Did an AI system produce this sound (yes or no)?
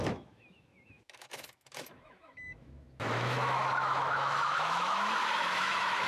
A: yes